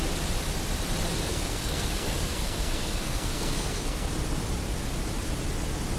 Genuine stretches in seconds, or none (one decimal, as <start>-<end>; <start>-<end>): 0.0-1.3; 4.1-6.0